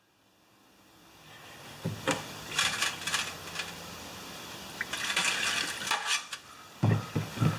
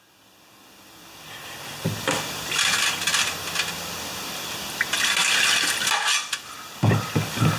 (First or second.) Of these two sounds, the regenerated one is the second